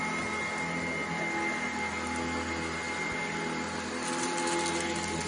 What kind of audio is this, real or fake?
real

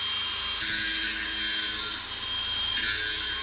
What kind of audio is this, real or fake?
real